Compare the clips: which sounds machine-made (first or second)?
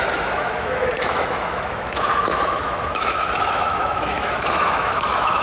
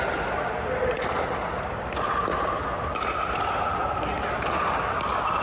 first